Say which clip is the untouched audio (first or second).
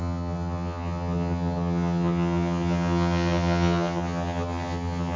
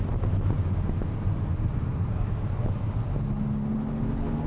second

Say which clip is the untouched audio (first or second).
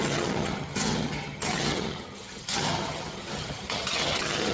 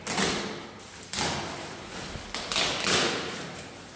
second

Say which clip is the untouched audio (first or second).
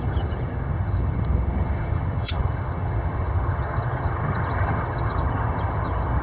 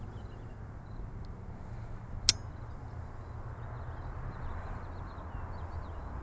second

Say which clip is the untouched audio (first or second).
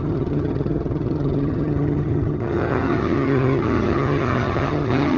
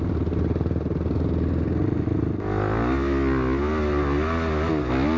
second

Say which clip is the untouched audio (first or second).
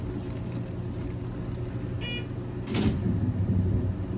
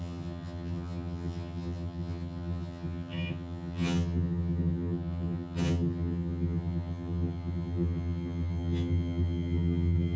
first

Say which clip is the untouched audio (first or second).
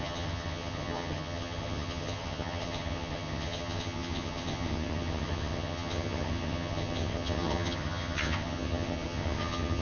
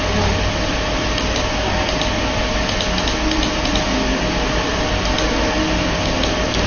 second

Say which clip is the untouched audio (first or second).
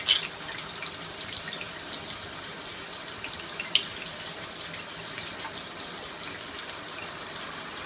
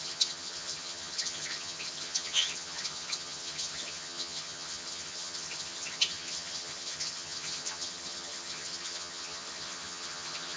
first